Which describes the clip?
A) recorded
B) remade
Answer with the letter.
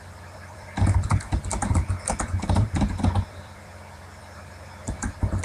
B